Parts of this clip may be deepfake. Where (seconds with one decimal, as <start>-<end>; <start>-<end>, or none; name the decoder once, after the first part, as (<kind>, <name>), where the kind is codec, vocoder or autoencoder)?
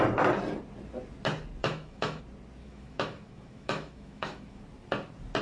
1.6-2.2 (autoencoder, DAC-VAE); 2.6-4.6